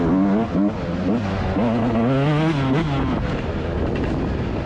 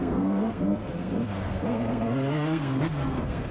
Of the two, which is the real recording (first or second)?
first